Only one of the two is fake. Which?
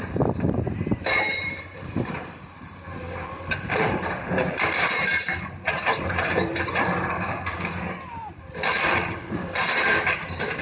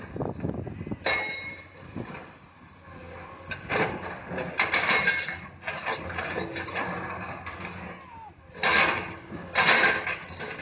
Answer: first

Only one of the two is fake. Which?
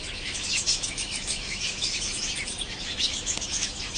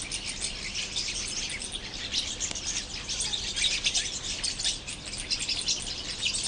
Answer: first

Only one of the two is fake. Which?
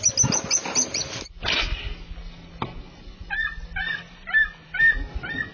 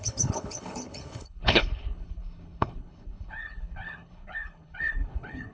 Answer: second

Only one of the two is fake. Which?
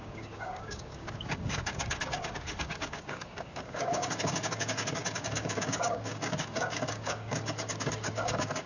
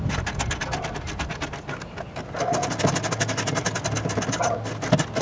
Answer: first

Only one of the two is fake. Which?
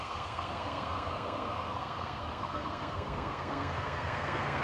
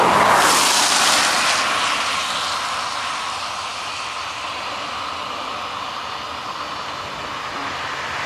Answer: first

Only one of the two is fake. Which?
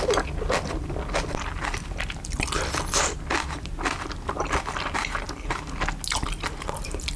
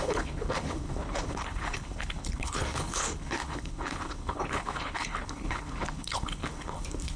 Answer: second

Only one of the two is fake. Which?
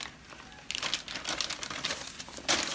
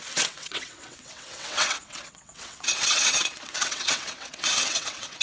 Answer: second